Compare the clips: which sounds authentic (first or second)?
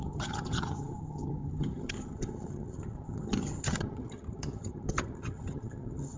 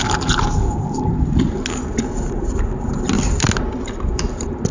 second